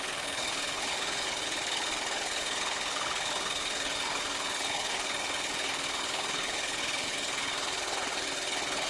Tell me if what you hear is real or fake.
fake